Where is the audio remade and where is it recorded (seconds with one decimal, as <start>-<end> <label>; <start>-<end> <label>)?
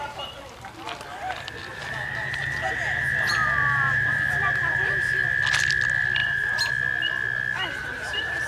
0.0-1.7 recorded; 1.7-5.2 remade; 5.2-6.2 recorded; 6.2-6.7 remade; 6.7-7.8 recorded; 7.8-8.5 remade